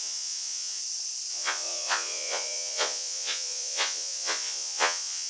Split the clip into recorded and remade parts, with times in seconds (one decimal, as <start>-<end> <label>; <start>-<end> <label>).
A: 0.0-0.8 remade; 0.8-1.3 recorded; 1.3-5.3 remade